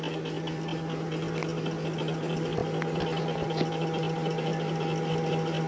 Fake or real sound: real